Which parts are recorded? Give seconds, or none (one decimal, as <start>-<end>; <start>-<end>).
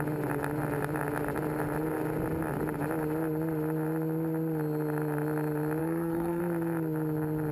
0.0-5.8; 6.4-7.5